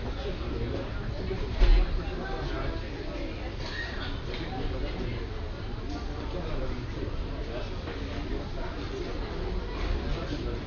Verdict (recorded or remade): recorded